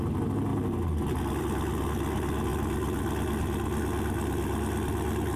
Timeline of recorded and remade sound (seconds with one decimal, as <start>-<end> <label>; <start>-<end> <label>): 0.0-5.4 recorded